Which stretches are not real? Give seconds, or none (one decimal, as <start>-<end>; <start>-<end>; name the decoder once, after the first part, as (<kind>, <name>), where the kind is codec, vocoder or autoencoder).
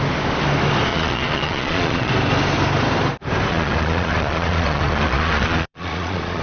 0.9-2.1 (vocoder, Vocos); 3.5-6.4